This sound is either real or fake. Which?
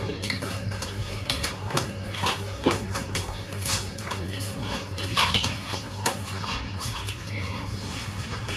fake